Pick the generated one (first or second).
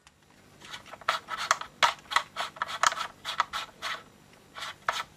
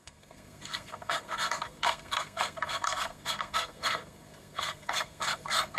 second